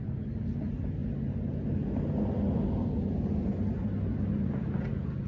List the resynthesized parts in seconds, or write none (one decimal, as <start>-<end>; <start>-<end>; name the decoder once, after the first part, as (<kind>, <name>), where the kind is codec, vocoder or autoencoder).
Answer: none

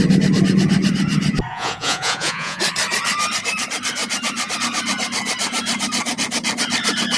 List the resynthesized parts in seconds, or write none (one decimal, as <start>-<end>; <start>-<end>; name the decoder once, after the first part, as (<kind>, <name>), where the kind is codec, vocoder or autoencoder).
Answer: 1.5-2.6 (vocoder, Vocos)

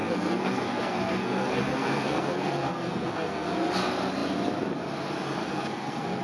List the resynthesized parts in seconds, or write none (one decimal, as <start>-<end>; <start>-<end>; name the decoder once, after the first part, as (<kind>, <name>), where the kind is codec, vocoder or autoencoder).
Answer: 0.0-3.7 (codec, SNAC); 5.4-6.2